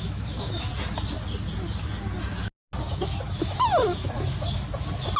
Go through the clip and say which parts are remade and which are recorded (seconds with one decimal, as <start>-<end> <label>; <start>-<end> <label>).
0.0-0.7 remade; 0.7-2.9 recorded; 2.9-4.3 remade; 4.3-5.2 recorded